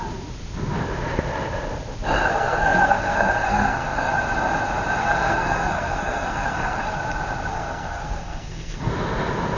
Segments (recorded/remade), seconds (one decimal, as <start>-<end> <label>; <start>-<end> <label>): 0.0-2.3 recorded; 2.3-4.1 remade; 4.1-5.0 recorded; 5.0-7.0 remade; 7.0-7.5 recorded; 7.5-8.9 remade; 8.9-9.6 recorded